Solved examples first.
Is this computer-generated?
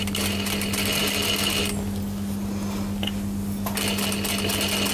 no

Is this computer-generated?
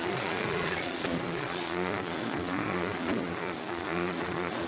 yes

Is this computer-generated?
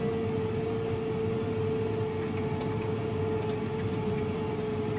no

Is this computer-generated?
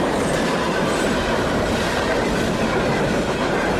yes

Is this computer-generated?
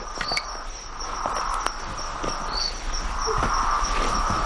no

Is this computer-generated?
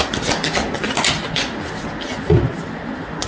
no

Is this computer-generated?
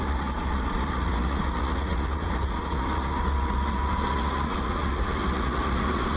yes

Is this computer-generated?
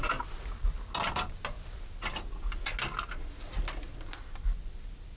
no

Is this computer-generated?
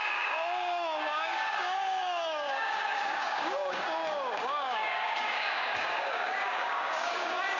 yes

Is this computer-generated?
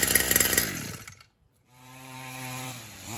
yes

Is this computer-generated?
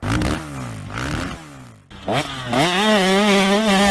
no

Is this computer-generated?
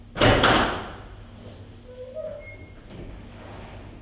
no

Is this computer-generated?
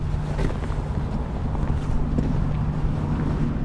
no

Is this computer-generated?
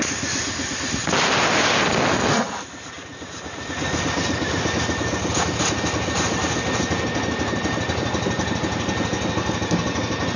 no